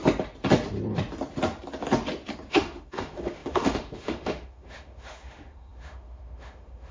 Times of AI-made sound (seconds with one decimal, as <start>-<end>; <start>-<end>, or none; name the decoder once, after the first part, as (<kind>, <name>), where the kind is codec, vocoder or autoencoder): 2.5-6.9 (autoencoder, DAC-VAE)